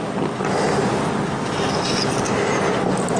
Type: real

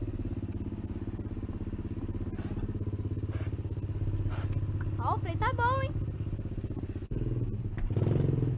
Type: real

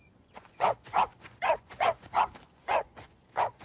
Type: fake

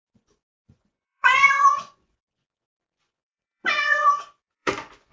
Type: fake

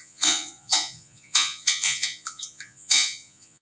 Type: fake